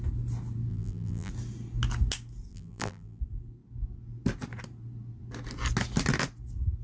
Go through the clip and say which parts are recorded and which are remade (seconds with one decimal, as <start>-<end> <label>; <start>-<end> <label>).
0.0-0.7 recorded; 0.7-1.3 remade; 1.3-2.5 recorded; 2.5-3.2 remade; 3.2-6.8 recorded

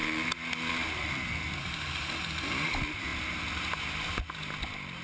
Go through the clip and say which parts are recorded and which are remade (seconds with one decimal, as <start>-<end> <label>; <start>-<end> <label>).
0.0-5.0 recorded

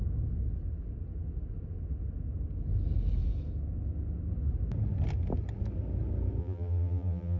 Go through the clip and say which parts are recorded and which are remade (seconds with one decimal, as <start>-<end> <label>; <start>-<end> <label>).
0.0-6.4 recorded; 6.4-7.4 remade

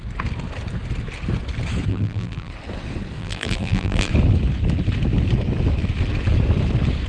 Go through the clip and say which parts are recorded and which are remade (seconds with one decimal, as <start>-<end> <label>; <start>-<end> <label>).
0.0-1.9 recorded; 1.9-2.5 remade; 2.5-3.2 recorded; 3.2-4.1 remade; 4.1-7.1 recorded

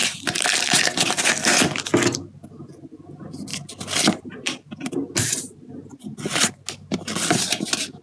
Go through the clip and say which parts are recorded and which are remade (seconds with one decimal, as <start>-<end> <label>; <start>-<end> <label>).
0.0-1.1 remade; 1.1-8.0 recorded

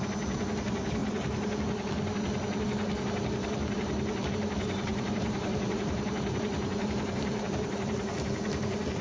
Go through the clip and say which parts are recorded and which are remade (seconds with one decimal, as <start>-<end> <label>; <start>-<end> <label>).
0.0-4.9 recorded; 4.9-7.9 remade; 7.9-9.0 recorded

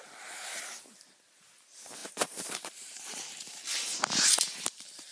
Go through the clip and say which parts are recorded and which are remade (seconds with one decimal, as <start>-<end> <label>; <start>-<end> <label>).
0.0-2.0 recorded; 2.0-3.5 remade; 3.5-5.1 recorded

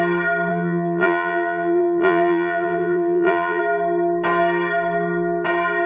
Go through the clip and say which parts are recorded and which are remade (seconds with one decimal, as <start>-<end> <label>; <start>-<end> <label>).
0.0-0.5 recorded; 0.5-3.6 remade; 3.6-5.9 recorded